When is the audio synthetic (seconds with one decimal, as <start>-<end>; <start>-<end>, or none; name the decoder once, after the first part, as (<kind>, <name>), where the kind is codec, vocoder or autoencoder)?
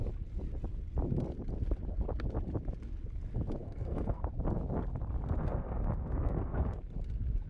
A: 3.6-4.3 (codec, SNAC); 5.4-6.8